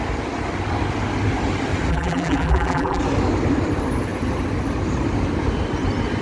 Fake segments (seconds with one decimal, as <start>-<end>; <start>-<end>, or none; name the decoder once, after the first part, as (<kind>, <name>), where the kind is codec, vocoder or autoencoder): 1.9-3.0 (vocoder, BigVGAN v2)